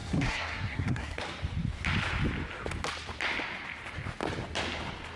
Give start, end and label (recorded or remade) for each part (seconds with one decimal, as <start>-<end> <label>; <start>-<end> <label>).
0.0-1.2 remade; 1.2-5.2 recorded